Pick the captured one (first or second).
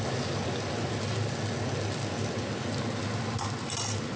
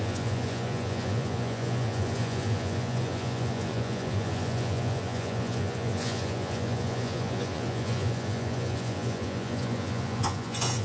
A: first